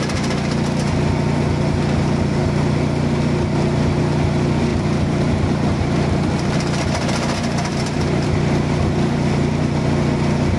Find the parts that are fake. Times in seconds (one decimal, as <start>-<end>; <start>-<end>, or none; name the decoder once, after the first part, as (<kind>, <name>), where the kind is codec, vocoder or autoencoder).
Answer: 4.7-9.8 (vocoder, BigVGAN v2)